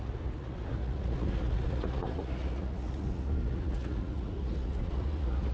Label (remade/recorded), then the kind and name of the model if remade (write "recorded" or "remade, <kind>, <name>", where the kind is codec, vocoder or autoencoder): remade, vocoder, Vocos